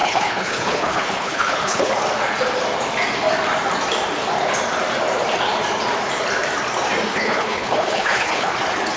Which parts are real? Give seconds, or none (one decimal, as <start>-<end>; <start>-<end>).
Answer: 1.9-7.1; 8.5-9.0